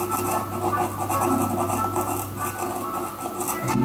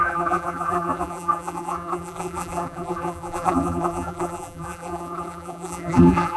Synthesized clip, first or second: second